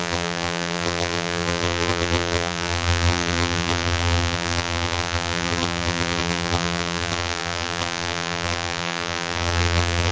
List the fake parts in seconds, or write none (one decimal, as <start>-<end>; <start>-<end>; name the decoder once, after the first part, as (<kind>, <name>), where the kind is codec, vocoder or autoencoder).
0.0-10.1 (vocoder, BigVGAN v2)